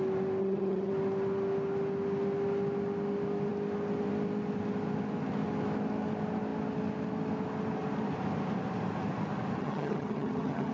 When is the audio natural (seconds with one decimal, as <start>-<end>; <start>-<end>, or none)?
0.0-0.4; 0.9-9.6